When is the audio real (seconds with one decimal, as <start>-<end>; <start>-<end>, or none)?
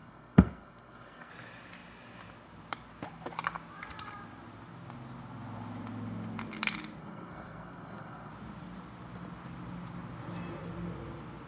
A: 1.3-7.0; 8.3-11.5